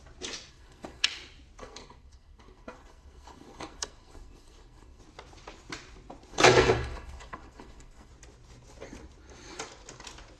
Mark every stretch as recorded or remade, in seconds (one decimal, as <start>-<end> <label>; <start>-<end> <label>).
0.0-0.5 recorded; 0.5-1.1 remade; 1.1-1.6 recorded; 1.6-5.0 remade; 5.0-6.3 recorded; 6.3-8.1 remade; 8.1-10.4 recorded